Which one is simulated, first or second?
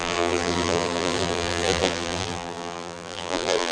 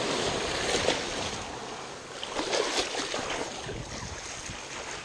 first